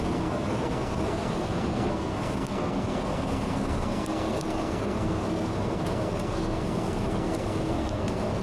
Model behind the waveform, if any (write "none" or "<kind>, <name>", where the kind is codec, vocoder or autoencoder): codec, SNAC